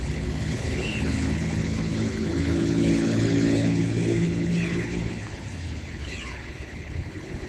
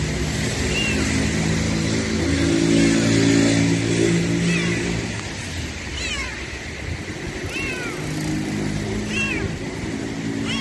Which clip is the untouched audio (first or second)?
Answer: second